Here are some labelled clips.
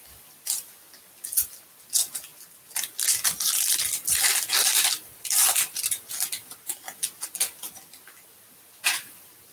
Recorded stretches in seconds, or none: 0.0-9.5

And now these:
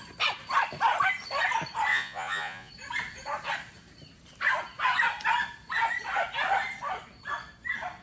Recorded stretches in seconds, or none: 0.0-1.9; 2.7-8.0

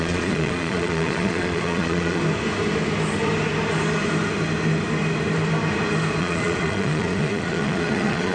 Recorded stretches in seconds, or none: 2.2-6.2

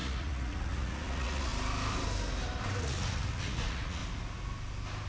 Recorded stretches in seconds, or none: 1.5-2.8; 4.0-5.1